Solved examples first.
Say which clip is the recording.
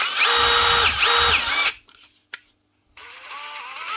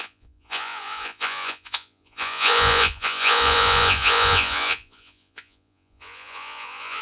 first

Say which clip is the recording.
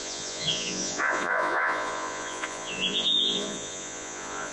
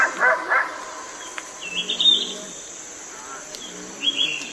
second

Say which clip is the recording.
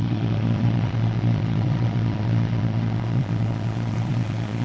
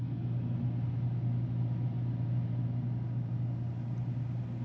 second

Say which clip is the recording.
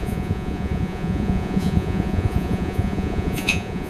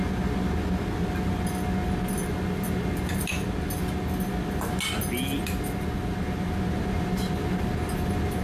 second